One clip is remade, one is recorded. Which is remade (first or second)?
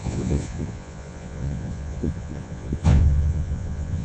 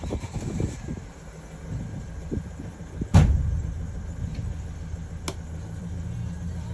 first